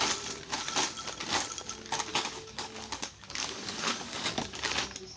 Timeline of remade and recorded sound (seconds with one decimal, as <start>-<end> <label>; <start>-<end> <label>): 0.0-2.1 recorded; 2.1-4.4 remade; 4.4-5.2 recorded